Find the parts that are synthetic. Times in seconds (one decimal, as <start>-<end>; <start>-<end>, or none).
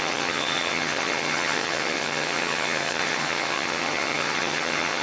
0.0-5.0